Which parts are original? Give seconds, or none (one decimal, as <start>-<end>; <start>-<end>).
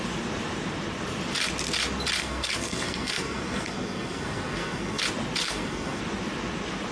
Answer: 0.0-2.2; 5.0-5.4; 6.0-6.9